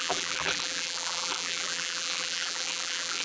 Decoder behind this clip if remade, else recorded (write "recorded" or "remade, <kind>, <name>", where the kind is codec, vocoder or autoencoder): remade, vocoder, BigVGAN v2